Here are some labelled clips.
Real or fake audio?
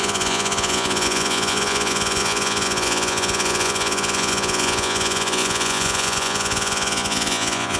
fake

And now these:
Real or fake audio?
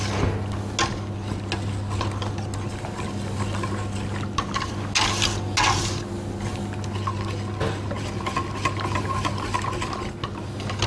real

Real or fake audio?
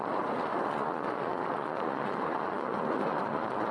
fake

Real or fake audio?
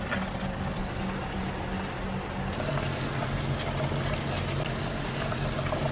real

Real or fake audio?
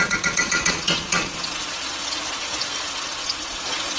fake